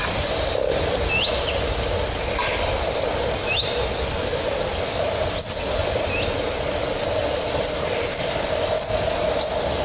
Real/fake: real